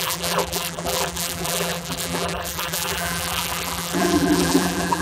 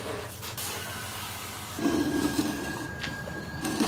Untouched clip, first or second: second